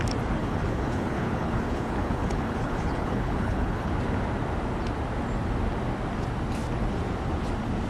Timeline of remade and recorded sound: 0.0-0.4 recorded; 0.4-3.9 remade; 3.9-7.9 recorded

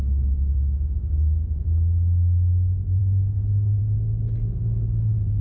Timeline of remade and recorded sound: 0.0-5.4 recorded

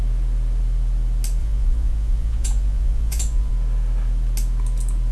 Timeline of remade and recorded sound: 0.0-1.4 recorded; 1.4-3.5 remade; 3.5-5.1 recorded

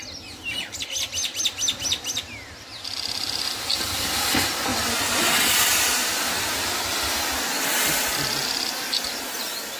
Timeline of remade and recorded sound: 0.0-4.7 recorded; 4.7-7.0 remade; 7.0-9.8 recorded